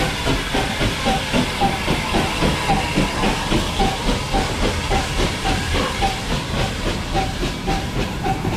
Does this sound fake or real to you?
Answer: real